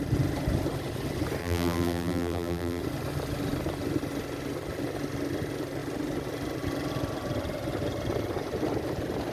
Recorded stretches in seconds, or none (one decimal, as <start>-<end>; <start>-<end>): 0.0-1.4; 2.8-9.3